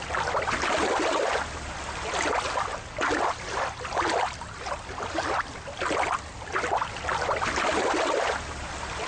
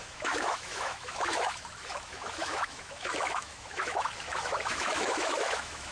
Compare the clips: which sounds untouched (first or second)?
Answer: first